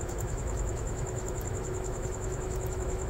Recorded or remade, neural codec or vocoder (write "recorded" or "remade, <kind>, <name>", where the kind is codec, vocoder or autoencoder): remade, autoencoder, DAC-VAE